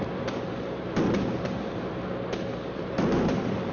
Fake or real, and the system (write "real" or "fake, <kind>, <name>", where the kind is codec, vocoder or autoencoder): real